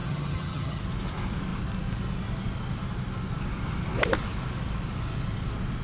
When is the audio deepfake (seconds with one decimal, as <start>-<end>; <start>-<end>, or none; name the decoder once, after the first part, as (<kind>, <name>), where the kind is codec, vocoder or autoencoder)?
0.0-0.8 (vocoder, HiFi-GAN)